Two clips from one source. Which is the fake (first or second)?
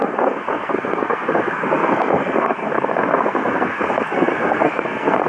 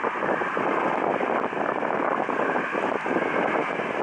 first